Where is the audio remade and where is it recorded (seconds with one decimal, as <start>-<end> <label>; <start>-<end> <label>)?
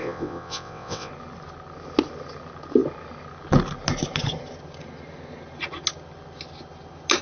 0.0-1.1 remade; 1.1-7.2 recorded